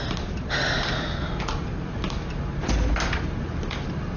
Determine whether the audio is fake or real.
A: real